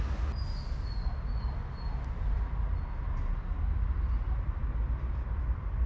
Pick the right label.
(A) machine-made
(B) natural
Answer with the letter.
B